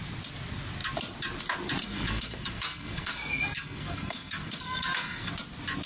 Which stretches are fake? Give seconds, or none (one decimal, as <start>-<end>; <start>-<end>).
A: 1.8-5.3